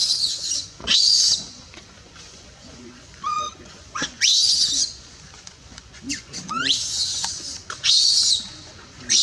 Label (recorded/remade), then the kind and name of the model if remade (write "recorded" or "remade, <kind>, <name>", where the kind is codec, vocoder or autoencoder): remade, vocoder, Vocos